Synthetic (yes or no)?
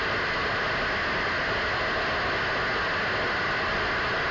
no